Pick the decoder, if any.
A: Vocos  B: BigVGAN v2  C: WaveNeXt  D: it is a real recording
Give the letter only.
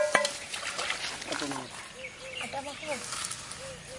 D